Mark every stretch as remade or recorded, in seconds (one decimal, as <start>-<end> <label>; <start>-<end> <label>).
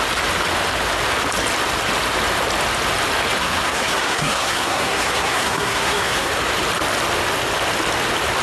0.0-3.4 recorded; 3.4-6.3 remade; 6.3-8.4 recorded